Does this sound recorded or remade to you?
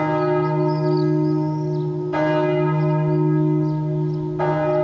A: recorded